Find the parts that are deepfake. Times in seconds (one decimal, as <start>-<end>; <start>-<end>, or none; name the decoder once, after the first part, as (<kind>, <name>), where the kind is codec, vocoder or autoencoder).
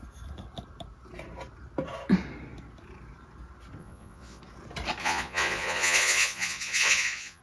3.8-4.4 (vocoder, Vocos); 5.0-7.4